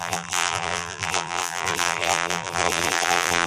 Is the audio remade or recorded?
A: remade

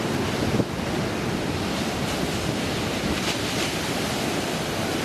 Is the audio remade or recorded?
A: recorded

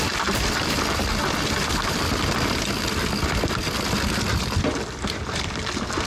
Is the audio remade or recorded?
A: recorded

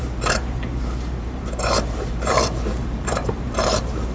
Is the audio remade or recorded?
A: remade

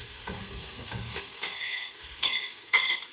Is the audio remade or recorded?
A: remade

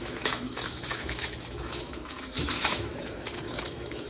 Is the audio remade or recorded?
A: remade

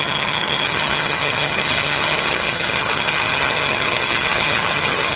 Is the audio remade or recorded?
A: remade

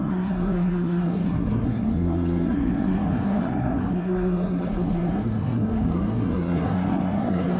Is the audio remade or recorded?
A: remade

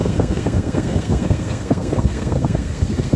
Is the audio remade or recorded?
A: remade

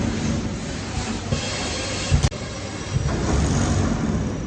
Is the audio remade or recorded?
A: recorded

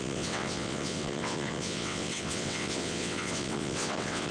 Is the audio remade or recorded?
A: remade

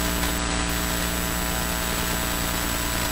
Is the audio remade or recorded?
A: recorded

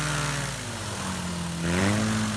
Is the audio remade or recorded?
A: recorded